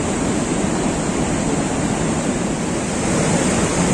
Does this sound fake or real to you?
real